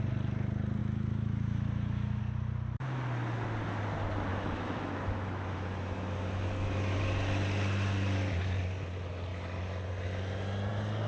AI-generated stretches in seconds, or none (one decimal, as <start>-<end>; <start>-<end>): 0.8-2.2; 4.3-7.0